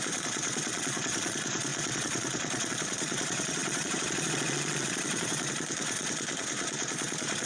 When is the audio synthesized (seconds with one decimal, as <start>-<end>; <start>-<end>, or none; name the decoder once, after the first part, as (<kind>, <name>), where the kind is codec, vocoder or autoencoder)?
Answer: 0.0-7.5 (vocoder, Vocos)